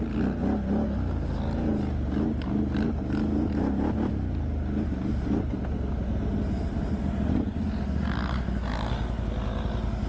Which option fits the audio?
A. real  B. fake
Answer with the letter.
A